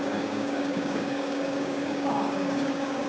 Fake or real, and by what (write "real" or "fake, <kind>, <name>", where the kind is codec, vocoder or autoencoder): fake, codec, DAC